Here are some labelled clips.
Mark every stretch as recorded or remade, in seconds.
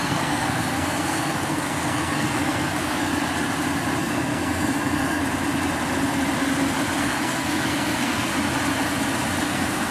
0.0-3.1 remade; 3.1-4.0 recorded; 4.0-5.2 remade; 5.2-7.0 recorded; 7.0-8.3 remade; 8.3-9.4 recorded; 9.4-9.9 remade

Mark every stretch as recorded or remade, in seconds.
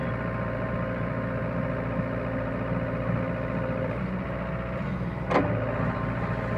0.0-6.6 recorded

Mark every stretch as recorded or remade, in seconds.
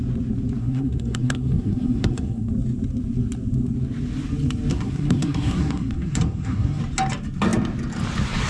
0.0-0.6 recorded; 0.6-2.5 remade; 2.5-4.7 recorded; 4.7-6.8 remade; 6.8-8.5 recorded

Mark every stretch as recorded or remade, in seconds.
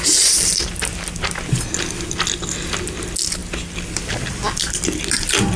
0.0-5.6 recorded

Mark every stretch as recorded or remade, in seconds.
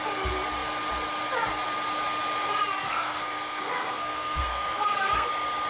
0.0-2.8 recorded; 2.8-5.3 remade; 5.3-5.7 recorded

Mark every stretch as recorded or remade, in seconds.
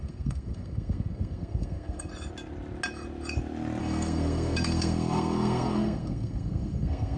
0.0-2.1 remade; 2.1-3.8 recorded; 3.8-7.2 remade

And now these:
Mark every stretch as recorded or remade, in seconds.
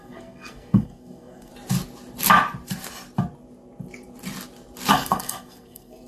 0.0-1.5 remade; 1.5-4.9 recorded; 4.9-6.1 remade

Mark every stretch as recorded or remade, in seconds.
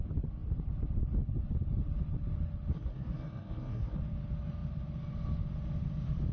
0.0-2.7 recorded; 2.7-4.0 remade; 4.0-6.3 recorded